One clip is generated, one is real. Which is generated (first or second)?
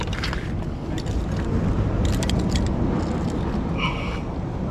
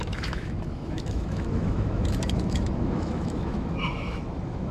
second